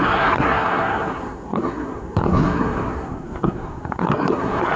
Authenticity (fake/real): fake